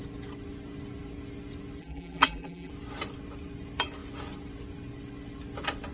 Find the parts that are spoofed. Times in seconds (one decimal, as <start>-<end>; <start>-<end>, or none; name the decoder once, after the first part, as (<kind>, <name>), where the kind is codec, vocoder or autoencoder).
1.8-2.7 (vocoder, BigVGAN v2)